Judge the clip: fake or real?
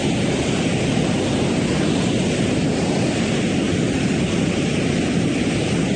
real